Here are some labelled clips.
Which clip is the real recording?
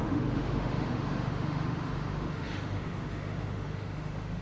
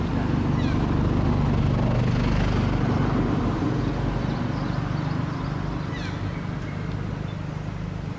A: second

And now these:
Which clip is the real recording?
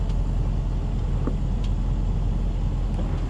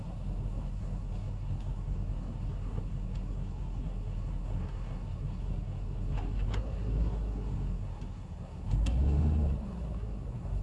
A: first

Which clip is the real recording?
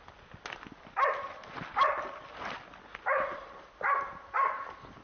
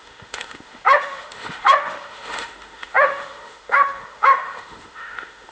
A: first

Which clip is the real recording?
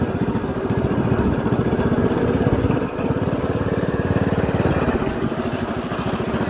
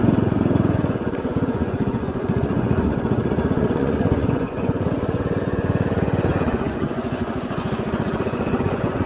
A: first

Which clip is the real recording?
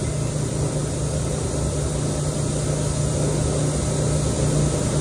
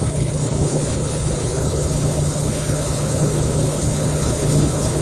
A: first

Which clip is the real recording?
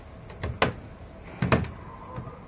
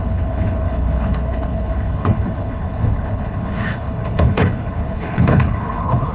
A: first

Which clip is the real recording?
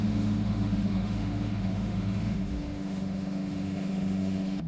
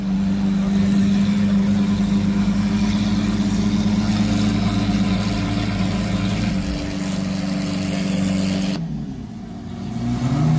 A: second